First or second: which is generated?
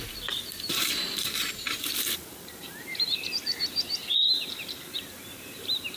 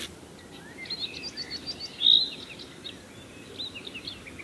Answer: first